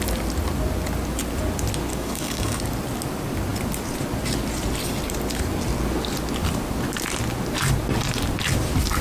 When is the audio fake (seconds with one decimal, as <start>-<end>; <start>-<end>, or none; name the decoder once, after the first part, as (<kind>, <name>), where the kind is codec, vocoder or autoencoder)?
1.9-2.6 (codec, DAC)